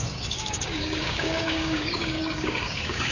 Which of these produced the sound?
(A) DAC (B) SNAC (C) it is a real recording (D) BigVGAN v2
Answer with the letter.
A